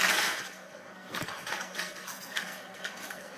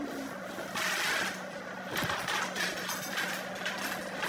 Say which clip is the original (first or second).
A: second